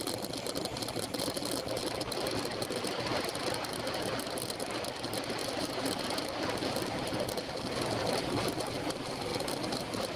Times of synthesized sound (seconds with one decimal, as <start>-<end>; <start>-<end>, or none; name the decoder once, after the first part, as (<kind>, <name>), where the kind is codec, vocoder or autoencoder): 5.4-6.0 (vocoder, BigVGAN v2)